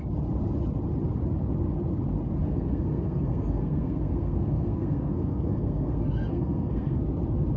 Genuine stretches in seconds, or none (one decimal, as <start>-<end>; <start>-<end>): 0.0-2.4; 7.0-7.6